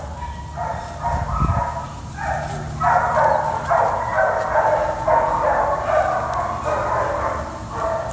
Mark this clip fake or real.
real